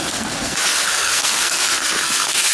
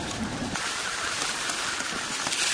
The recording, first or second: second